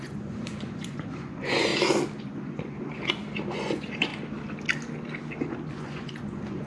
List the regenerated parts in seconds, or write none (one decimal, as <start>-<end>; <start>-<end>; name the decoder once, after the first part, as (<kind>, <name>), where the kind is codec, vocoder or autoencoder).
0.0-1.7 (vocoder, Vocos); 2.2-4.1; 5.8-6.7